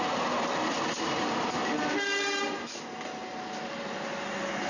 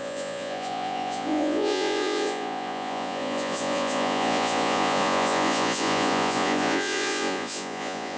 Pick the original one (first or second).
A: first